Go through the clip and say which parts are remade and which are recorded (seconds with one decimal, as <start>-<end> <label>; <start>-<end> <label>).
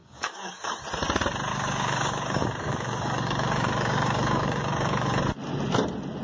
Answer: 0.0-0.7 remade; 0.7-1.5 recorded; 1.5-5.2 remade; 5.2-6.2 recorded